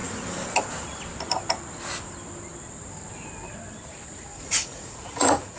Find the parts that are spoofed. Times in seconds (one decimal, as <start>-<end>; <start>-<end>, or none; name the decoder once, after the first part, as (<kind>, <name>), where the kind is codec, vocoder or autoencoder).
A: 4.3-5.6 (vocoder, Vocos)